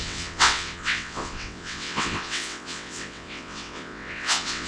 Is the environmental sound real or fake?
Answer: fake